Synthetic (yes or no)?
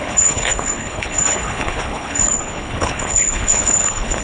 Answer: yes